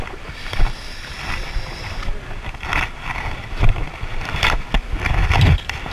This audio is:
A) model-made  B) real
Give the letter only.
B